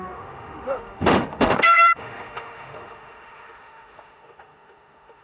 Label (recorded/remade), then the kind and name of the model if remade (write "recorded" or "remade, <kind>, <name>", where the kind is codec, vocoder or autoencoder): remade, autoencoder, DAC-VAE